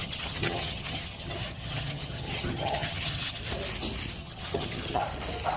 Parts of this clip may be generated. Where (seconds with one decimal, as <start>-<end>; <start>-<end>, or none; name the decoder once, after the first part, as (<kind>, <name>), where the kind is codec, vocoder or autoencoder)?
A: 0.0-3.4 (vocoder, HiFi-GAN); 4.2-5.0